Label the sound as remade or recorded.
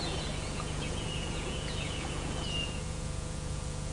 remade